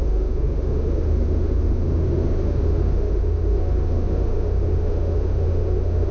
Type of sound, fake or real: fake